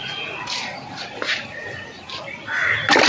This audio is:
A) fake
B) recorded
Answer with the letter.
B